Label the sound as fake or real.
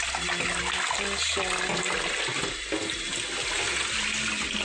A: real